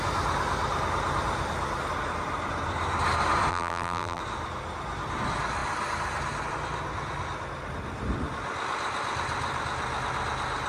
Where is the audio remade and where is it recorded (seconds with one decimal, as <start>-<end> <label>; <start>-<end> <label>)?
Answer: 0.0-3.5 recorded; 3.5-4.2 remade; 4.2-10.7 recorded